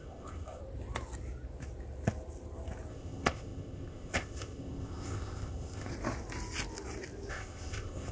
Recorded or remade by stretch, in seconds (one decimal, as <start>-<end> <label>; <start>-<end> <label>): 0.0-0.6 remade; 0.6-2.9 recorded; 2.9-5.9 remade; 5.9-7.3 recorded; 7.3-8.1 remade